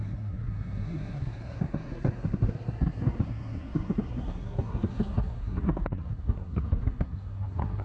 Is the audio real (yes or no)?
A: no